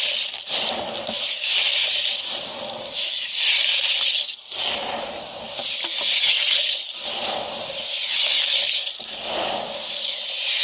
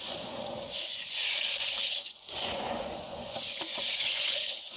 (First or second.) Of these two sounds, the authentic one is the first